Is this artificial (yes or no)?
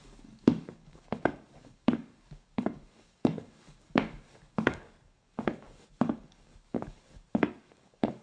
yes